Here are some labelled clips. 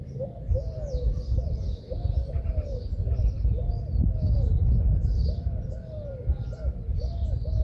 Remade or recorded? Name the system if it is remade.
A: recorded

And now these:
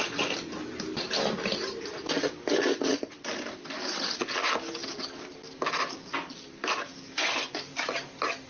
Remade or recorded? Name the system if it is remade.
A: recorded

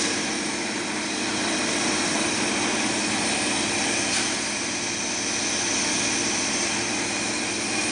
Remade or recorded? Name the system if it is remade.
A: recorded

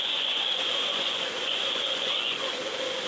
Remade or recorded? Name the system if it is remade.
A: remade, vocoder, Vocos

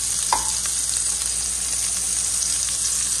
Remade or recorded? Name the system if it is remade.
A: recorded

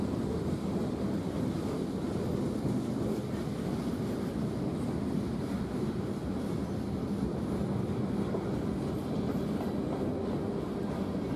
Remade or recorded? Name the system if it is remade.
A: recorded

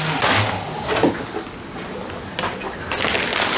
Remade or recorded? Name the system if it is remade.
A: recorded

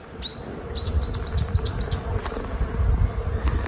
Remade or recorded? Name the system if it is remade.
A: recorded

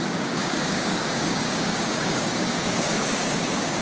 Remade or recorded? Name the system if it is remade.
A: remade, codec, DAC